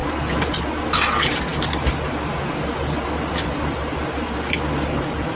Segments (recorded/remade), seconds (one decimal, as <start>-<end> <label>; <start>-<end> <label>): 0.0-5.4 recorded